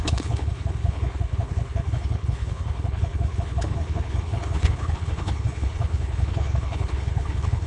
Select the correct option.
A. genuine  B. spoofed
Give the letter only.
B